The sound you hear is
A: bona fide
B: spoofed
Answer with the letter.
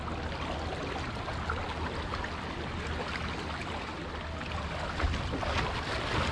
A